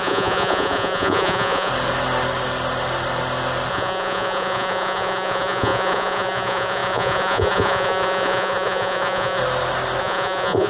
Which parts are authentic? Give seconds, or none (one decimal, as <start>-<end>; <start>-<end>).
1.7-3.7; 9.4-10.0